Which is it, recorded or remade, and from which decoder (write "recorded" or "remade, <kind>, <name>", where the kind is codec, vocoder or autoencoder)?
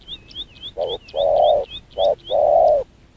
recorded